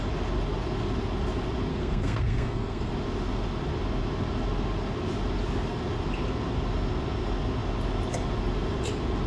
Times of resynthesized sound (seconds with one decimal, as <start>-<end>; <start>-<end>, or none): 1.7-2.9